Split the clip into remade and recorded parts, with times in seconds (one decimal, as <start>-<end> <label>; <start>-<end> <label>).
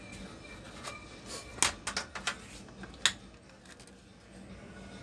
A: 0.0-5.0 recorded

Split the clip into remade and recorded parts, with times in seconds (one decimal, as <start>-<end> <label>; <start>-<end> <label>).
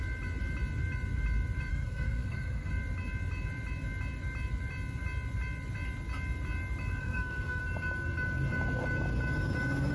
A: 0.0-1.7 recorded; 1.7-2.7 remade; 2.7-7.0 recorded; 7.0-7.6 remade; 7.6-9.9 recorded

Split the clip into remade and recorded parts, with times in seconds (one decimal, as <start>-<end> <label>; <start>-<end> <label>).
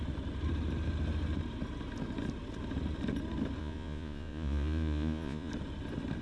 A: 0.0-3.6 recorded; 3.6-5.5 remade; 5.5-6.2 recorded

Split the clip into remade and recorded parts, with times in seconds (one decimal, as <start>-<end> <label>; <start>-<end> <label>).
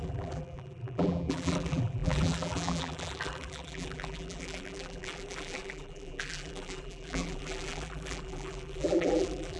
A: 0.0-9.6 remade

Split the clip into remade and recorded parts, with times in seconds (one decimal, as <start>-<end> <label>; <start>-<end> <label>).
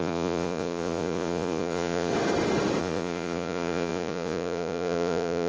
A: 0.0-2.1 remade; 2.1-2.8 recorded; 2.8-5.5 remade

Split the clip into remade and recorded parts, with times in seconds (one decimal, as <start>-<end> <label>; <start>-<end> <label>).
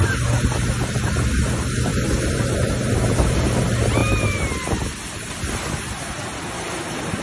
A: 0.0-7.2 recorded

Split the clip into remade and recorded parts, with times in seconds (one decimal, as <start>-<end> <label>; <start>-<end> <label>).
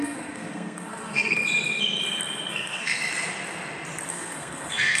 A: 0.0-1.4 remade; 1.4-2.5 recorded; 2.5-3.0 remade; 3.0-4.1 recorded; 4.1-5.0 remade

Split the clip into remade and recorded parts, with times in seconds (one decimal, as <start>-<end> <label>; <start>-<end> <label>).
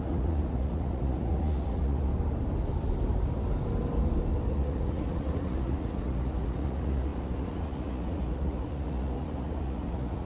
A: 0.0-2.1 remade; 2.1-4.5 recorded; 4.5-10.3 remade